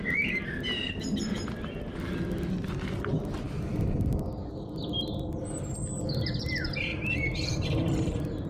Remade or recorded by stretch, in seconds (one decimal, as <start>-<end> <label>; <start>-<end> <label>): 0.0-6.9 recorded; 6.9-8.5 remade